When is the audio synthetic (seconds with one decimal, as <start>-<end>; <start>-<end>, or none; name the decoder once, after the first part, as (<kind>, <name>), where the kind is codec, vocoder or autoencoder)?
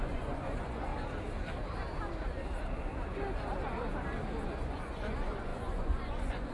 0.0-0.9 (vocoder, Vocos); 4.4-6.5